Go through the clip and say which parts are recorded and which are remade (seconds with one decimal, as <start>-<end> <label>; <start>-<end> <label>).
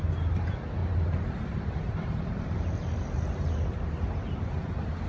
0.0-0.8 recorded; 0.8-3.9 remade; 3.9-5.1 recorded